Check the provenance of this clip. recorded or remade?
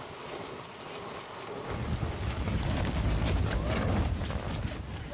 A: recorded